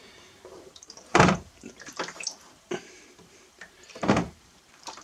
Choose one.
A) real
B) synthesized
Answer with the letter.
B